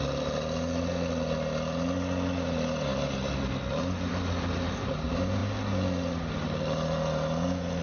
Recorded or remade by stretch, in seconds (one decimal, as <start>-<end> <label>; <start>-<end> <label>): 0.0-7.8 recorded